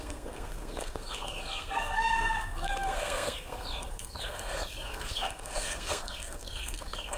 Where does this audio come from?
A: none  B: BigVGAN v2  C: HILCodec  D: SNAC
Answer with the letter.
D